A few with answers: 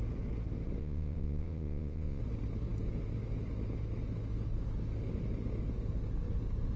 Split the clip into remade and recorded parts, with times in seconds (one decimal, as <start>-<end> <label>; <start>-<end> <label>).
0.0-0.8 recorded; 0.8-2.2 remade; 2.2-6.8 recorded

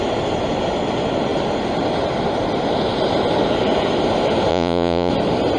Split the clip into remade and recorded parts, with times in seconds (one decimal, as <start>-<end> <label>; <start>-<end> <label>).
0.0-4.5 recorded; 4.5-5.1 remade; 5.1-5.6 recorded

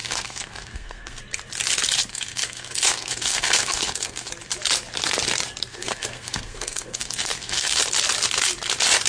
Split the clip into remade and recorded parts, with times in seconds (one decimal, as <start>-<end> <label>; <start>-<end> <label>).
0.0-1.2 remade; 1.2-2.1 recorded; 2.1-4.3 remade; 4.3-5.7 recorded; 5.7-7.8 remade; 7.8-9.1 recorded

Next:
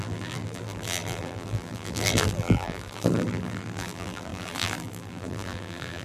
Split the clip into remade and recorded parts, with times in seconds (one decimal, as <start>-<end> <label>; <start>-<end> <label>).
0.0-6.0 remade

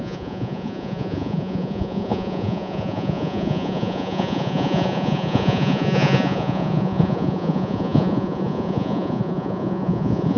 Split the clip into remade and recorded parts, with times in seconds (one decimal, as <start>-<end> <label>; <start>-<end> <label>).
0.0-10.4 remade

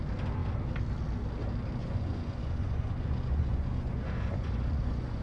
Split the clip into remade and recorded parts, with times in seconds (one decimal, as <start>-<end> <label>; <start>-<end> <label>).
0.0-1.8 recorded; 1.8-5.2 remade

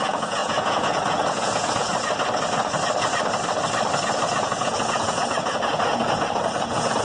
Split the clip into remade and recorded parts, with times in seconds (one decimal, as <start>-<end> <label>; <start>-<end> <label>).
0.0-1.9 remade; 1.9-4.3 recorded; 4.3-7.0 remade

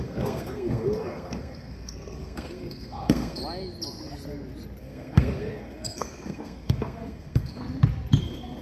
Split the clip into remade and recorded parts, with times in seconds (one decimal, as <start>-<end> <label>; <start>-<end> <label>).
0.0-3.4 remade; 3.4-4.8 recorded; 4.8-7.6 remade; 7.6-8.2 recorded; 8.2-8.6 remade